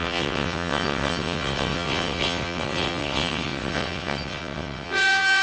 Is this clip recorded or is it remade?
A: remade